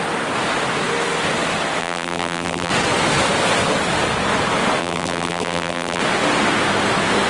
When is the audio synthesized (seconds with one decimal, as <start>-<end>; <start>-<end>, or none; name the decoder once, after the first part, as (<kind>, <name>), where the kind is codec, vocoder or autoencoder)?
1.8-2.7 (vocoder, BigVGAN v2); 4.8-6.0